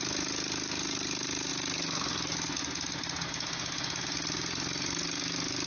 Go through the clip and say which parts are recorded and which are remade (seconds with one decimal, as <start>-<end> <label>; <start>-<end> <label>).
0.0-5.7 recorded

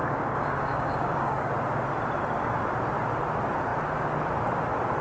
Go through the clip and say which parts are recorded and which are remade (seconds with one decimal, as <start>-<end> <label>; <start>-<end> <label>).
0.0-1.5 remade; 1.5-5.0 recorded

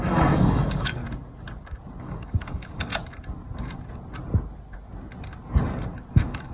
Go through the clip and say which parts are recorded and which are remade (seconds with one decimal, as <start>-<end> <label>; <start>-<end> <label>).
0.0-1.0 remade; 1.0-2.0 recorded; 2.0-2.9 remade; 2.9-6.1 recorded; 6.1-6.5 remade